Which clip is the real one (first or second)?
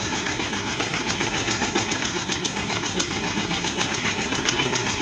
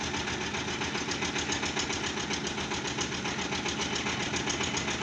second